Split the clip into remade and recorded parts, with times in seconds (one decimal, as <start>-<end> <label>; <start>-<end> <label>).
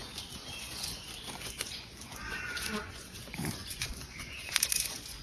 0.0-5.2 remade